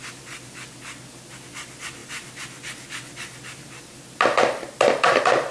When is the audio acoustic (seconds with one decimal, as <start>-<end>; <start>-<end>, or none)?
0.0-5.5